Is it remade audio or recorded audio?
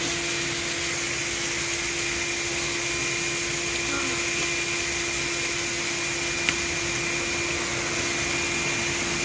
recorded